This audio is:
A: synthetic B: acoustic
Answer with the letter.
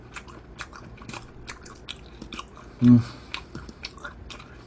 B